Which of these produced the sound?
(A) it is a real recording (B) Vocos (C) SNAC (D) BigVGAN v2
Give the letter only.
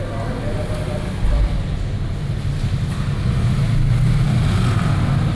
A